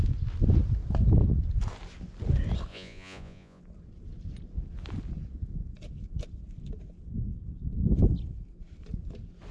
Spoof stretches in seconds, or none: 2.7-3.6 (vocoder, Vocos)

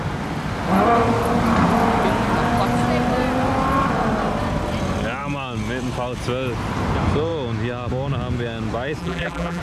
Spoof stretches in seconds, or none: 9.0-9.6 (vocoder, BigVGAN v2)

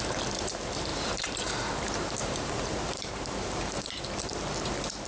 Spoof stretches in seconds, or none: 0.9-4.0 (vocoder, BigVGAN v2)

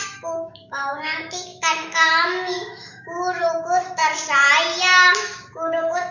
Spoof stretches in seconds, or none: 0.0-4.0 (autoencoder, DAC-VAE); 5.1-6.1